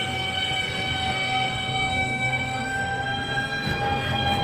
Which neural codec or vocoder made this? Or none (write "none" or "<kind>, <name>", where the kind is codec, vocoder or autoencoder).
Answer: codec, SNAC